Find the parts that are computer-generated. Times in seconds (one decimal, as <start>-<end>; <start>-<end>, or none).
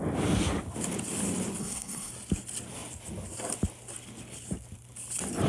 1.6-2.1